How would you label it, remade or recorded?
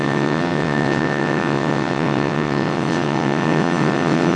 remade